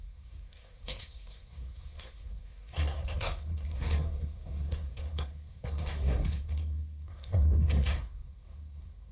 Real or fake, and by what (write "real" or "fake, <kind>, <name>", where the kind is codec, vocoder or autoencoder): fake, codec, SNAC